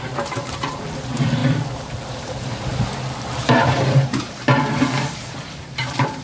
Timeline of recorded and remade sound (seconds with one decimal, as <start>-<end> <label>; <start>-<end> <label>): 0.0-1.4 remade; 1.4-2.1 recorded; 2.1-2.7 remade; 2.7-3.4 recorded; 3.4-6.2 remade